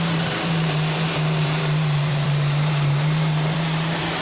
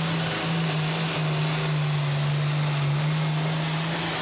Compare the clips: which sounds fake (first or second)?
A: first